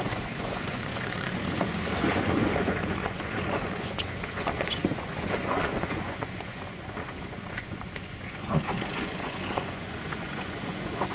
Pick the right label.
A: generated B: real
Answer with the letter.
A